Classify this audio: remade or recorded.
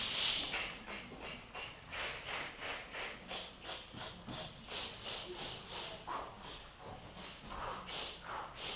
recorded